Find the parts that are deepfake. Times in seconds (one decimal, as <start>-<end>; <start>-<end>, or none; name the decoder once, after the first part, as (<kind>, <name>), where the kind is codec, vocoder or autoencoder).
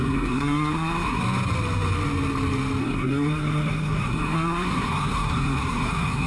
0.0-1.2 (codec, SNAC); 2.8-6.3